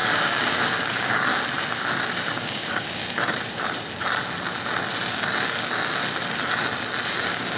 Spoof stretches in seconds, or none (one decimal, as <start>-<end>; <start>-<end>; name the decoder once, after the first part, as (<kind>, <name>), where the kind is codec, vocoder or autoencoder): 0.0-1.3 (codec, DAC); 2.3-3.0; 7.1-7.6